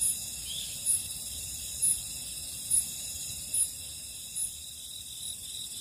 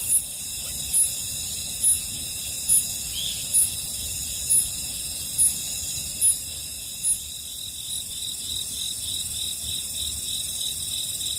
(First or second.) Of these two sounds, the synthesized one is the first